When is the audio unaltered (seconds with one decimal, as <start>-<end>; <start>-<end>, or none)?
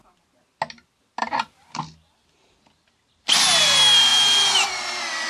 0.0-1.2; 1.8-5.3